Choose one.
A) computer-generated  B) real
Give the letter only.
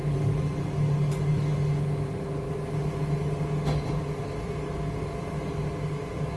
B